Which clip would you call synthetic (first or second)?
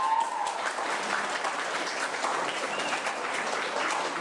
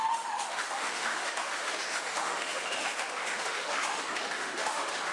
second